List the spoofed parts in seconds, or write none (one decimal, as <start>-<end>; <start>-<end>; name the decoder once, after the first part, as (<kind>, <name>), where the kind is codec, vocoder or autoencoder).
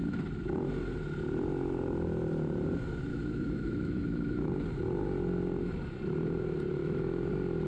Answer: 3.1-4.5 (autoencoder, DAC-VAE); 6.8-7.3